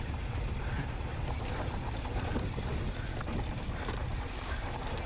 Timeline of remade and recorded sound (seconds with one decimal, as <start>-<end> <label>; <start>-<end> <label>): 0.0-2.7 remade; 2.7-3.5 recorded; 3.5-5.1 remade